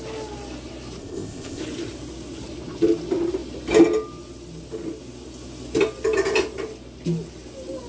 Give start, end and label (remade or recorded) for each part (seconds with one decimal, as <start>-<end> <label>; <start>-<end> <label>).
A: 0.0-1.0 recorded; 1.0-1.6 remade; 1.6-7.9 recorded